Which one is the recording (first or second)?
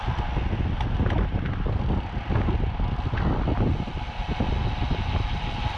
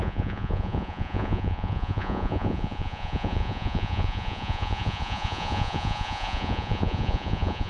first